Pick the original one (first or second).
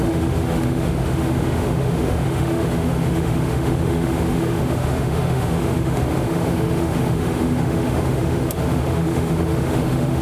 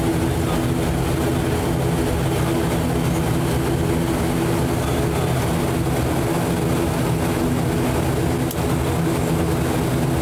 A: second